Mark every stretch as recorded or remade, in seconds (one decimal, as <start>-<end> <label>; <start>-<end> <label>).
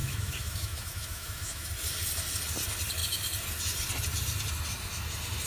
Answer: 0.0-1.7 remade; 1.7-5.5 recorded